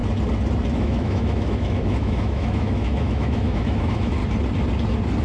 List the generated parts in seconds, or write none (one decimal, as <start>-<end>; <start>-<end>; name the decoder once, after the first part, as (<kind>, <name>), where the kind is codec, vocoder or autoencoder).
0.7-4.2 (autoencoder, DAC-VAE)